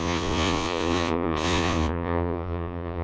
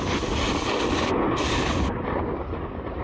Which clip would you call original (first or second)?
second